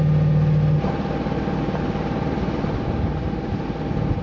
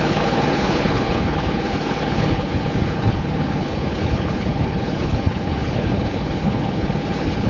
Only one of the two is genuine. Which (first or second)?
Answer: first